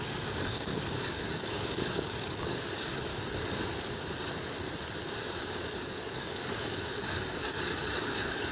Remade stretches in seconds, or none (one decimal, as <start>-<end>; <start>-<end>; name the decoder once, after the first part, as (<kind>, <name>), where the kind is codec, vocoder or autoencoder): 0.0-3.1 (codec, DAC); 5.5-8.5